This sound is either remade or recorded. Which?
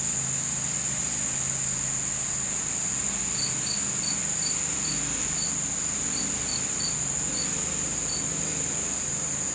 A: recorded